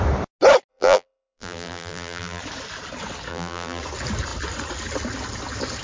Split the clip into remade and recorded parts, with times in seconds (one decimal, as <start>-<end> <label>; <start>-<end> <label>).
0.0-0.7 recorded; 0.7-2.4 remade; 2.4-3.3 recorded; 3.3-3.8 remade; 3.8-5.8 recorded